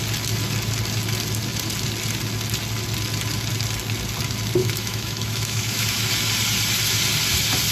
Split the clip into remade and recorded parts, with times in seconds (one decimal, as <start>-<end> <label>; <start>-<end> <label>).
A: 0.0-4.6 recorded; 4.6-6.1 remade; 6.1-7.7 recorded